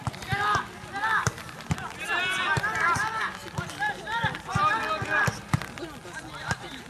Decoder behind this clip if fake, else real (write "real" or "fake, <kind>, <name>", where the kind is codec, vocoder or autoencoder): real